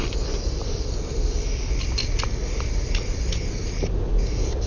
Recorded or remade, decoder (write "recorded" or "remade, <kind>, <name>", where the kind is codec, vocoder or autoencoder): recorded